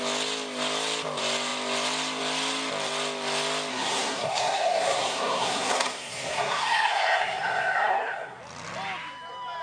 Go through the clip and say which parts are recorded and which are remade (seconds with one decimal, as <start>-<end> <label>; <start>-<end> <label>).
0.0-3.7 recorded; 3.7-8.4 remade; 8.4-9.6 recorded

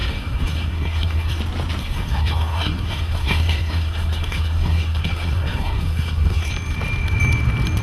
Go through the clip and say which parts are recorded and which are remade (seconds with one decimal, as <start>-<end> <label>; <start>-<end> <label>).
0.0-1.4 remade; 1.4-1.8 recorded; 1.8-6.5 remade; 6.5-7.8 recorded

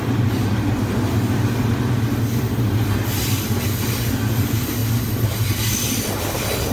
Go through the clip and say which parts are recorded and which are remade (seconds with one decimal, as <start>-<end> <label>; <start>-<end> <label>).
0.0-6.7 recorded